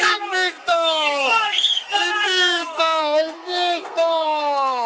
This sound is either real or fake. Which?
fake